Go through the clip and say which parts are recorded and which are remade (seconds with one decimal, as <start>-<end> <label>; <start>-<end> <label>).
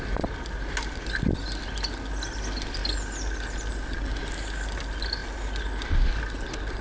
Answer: 0.0-6.8 recorded